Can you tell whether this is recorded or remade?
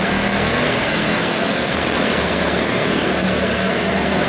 remade